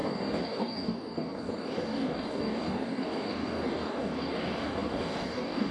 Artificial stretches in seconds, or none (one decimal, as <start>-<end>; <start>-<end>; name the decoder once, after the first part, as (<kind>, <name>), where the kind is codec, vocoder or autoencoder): 0.0-5.7 (codec, DAC)